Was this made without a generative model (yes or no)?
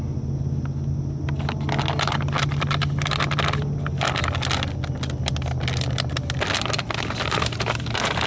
yes